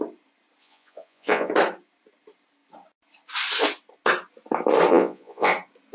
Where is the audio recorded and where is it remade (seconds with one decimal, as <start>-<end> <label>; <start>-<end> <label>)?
0.0-0.6 recorded; 0.6-1.5 remade; 1.5-4.9 recorded; 4.9-5.5 remade; 5.5-5.9 recorded